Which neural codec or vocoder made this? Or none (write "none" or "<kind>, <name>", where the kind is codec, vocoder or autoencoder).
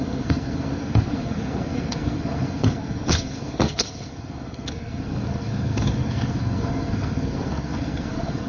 codec, SNAC